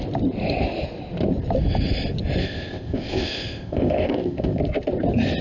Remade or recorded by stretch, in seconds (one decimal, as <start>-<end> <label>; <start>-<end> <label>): 0.0-2.4 recorded; 2.4-4.6 remade; 4.6-5.4 recorded